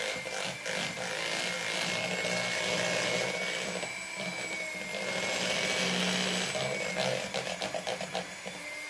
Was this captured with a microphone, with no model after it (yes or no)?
yes